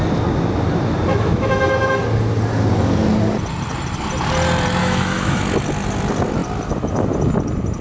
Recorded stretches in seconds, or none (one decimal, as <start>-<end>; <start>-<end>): 0.0-1.1; 2.0-4.8; 5.4-7.8